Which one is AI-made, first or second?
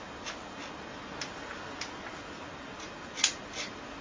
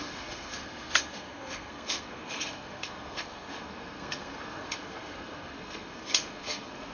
second